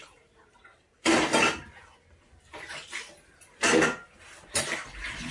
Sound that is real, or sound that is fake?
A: fake